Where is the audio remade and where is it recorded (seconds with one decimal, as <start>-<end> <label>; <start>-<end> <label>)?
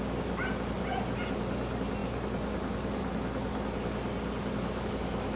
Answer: 0.0-5.4 recorded